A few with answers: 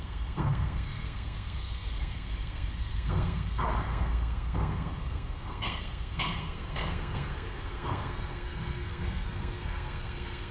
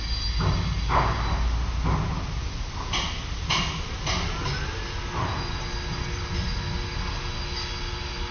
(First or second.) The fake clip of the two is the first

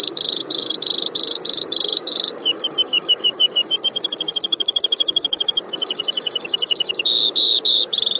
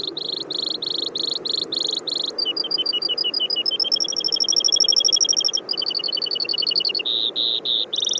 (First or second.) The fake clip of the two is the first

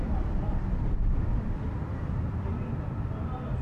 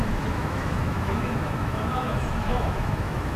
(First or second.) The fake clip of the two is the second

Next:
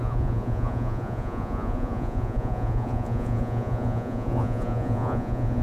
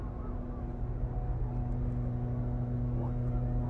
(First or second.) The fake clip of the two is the first